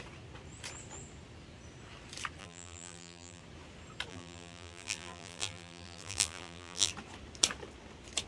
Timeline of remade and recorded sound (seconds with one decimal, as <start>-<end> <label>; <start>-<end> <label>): 0.0-2.4 recorded; 2.4-3.4 remade; 3.4-4.1 recorded; 4.1-6.9 remade; 6.9-8.3 recorded

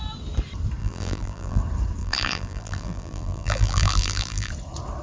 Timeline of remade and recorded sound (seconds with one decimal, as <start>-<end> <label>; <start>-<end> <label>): 0.0-0.8 recorded; 0.8-1.6 remade; 1.6-2.0 recorded; 2.0-4.5 remade; 4.5-5.0 recorded

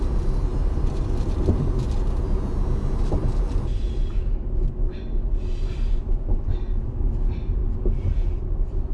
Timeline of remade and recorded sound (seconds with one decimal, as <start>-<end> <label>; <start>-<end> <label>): 0.0-0.5 recorded; 0.5-2.2 remade; 2.2-8.9 recorded

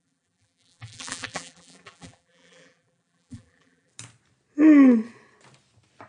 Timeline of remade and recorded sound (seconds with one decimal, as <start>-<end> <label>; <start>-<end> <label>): 0.0-3.9 remade; 3.9-6.1 recorded

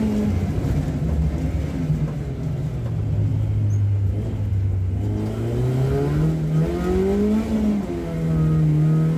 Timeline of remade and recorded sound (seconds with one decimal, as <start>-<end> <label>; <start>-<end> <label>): 0.0-9.2 recorded